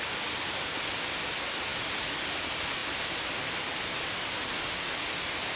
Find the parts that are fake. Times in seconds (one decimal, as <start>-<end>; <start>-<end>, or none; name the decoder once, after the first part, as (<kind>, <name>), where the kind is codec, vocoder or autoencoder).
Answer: none